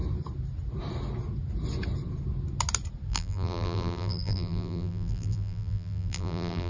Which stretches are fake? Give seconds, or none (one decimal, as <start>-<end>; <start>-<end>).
3.1-6.7